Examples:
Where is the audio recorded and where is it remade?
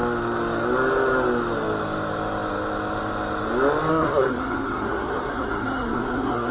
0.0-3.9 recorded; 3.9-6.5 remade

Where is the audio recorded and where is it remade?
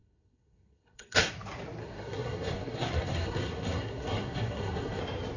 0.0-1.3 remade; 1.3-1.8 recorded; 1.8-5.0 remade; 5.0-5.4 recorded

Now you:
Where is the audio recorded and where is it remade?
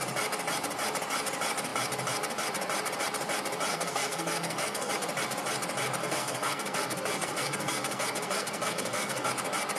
0.0-3.7 recorded; 3.7-4.9 remade; 4.9-6.0 recorded; 6.0-9.3 remade; 9.3-9.8 recorded